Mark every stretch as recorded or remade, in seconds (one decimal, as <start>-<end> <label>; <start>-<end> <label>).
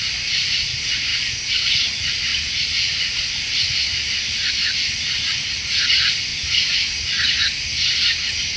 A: 0.0-2.3 recorded; 2.3-4.4 remade; 4.4-8.6 recorded